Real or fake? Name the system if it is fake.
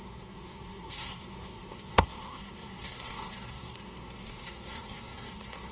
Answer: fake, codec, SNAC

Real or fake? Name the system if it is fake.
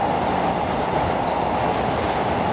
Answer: real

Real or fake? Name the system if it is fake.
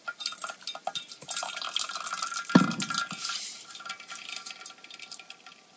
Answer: real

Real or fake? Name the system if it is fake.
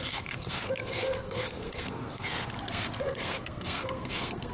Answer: fake, codec, SNAC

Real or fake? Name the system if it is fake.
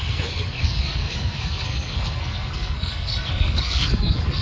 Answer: fake, codec, SNAC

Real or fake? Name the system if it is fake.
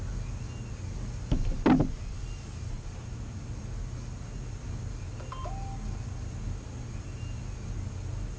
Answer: real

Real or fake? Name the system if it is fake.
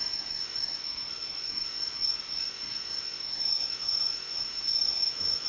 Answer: fake, codec, SNAC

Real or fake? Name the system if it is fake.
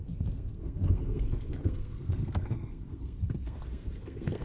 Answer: fake, codec, SNAC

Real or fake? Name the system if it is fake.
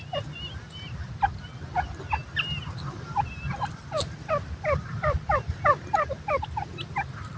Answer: real